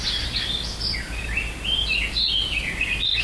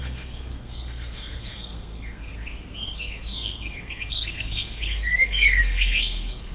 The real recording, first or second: first